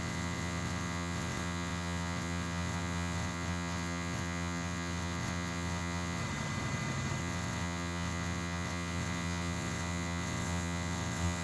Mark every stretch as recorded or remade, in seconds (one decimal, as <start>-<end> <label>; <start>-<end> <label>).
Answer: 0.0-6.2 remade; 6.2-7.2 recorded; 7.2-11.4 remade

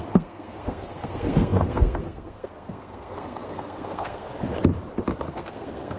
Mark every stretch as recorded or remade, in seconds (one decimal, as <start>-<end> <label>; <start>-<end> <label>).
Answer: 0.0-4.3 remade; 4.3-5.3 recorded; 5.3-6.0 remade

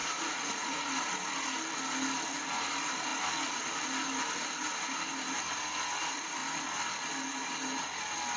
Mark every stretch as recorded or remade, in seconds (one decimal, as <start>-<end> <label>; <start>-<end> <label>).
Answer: 0.0-0.9 remade; 0.9-8.4 recorded